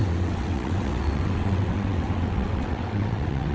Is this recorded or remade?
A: remade